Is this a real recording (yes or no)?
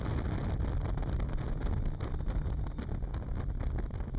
yes